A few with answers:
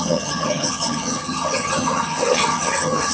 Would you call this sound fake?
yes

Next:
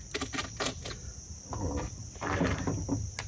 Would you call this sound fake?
no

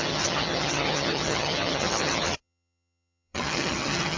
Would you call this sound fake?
yes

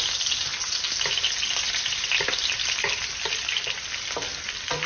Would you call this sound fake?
no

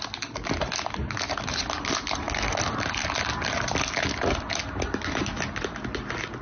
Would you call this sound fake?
no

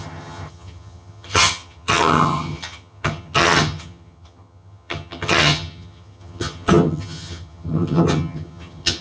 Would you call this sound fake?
yes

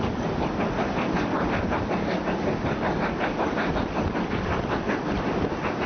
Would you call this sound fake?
no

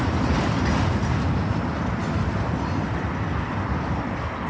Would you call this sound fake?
no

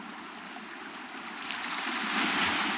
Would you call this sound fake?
no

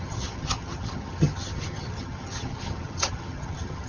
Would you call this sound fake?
yes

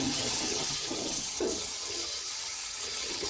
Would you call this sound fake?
yes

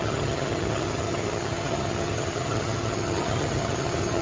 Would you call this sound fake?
yes